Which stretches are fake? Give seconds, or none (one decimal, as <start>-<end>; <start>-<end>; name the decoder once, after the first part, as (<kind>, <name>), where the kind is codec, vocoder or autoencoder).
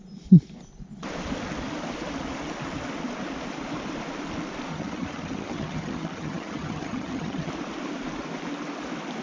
4.7-7.5 (vocoder, HiFi-GAN)